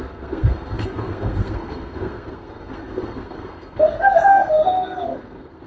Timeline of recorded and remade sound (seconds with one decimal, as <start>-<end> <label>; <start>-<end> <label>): 0.0-5.7 remade